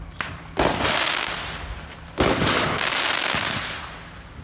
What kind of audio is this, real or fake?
real